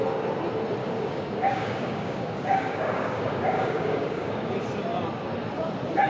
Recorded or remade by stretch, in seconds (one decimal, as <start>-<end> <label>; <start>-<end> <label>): 0.0-0.8 recorded; 0.8-4.5 remade; 4.5-6.1 recorded